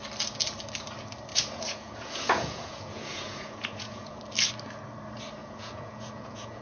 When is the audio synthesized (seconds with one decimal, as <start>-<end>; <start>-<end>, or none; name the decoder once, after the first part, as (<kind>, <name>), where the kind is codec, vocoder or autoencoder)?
1.3-4.2 (vocoder, Vocos); 5.4-6.6